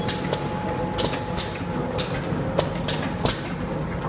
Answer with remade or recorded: recorded